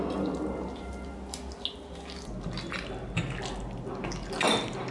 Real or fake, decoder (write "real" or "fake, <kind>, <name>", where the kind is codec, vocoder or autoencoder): real